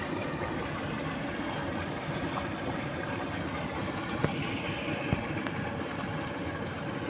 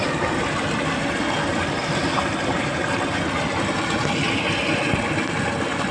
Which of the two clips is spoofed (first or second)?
first